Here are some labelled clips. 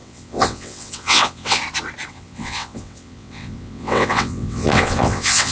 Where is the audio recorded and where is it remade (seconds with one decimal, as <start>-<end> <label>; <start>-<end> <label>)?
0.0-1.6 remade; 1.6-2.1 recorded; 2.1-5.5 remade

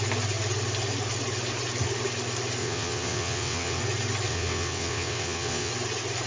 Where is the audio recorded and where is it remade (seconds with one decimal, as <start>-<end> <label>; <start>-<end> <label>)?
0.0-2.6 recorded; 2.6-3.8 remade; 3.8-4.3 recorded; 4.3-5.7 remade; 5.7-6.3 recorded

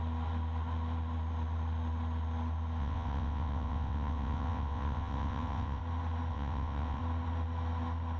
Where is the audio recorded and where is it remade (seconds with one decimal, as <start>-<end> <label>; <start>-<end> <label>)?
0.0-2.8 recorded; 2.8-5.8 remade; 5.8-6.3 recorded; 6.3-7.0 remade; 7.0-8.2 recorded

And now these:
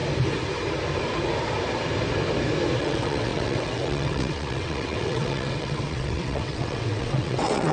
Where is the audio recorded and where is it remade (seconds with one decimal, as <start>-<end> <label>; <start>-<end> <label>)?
0.0-2.8 recorded; 2.8-7.7 remade

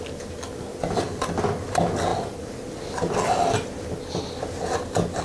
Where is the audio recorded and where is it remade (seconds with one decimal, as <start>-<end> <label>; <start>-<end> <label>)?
0.0-5.2 recorded

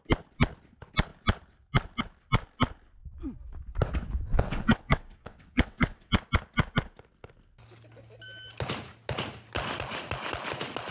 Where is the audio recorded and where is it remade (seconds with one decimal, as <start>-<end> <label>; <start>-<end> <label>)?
0.0-4.3 recorded; 4.3-6.1 remade; 6.1-10.9 recorded

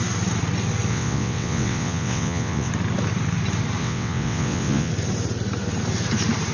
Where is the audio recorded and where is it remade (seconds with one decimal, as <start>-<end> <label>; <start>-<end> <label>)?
0.0-0.9 recorded; 0.9-2.7 remade; 2.7-3.8 recorded; 3.8-4.9 remade; 4.9-6.5 recorded